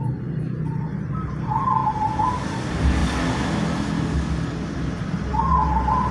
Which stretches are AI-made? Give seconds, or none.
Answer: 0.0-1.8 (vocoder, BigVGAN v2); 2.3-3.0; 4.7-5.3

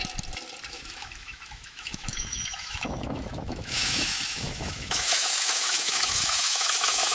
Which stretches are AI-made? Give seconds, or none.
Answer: 0.7-7.1 (autoencoder, DAC-VAE)